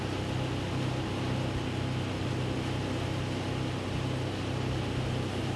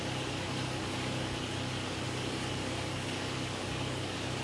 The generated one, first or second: second